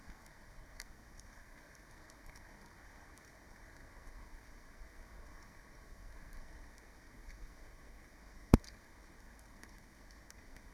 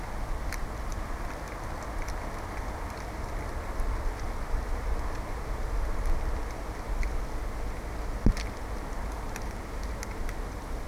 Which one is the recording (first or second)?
second